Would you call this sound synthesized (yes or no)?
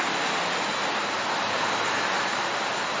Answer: no